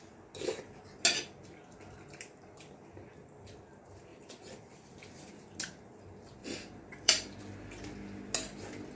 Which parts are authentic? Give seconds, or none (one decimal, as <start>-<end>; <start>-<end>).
0.0-4.1; 5.3-6.4; 7.4-8.9